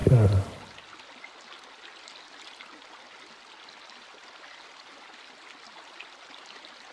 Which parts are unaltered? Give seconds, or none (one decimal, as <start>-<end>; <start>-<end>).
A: 0.0-6.9